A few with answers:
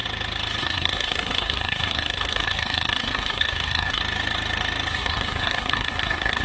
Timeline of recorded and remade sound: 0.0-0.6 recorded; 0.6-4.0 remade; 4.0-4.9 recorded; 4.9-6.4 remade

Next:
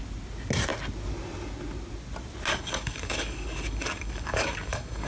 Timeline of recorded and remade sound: 0.0-2.5 recorded; 2.5-5.1 remade